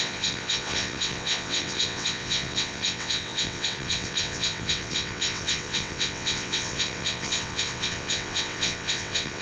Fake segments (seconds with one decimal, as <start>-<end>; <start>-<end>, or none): 0.0-9.4